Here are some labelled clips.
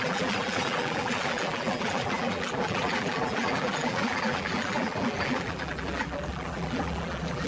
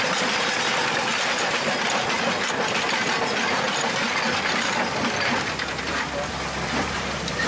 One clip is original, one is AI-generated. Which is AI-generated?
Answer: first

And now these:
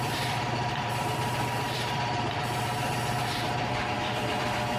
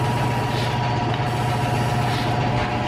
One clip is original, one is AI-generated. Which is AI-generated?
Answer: first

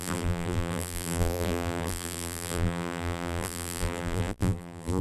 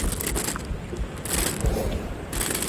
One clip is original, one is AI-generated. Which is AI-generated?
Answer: first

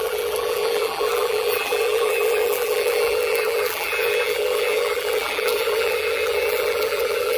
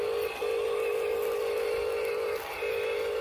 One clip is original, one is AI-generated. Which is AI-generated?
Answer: first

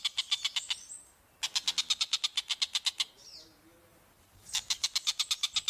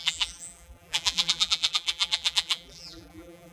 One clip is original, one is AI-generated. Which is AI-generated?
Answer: second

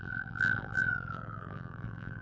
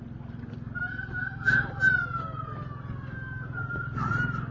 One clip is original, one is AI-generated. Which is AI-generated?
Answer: first